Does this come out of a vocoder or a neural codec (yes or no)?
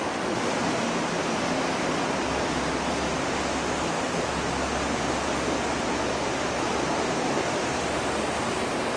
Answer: no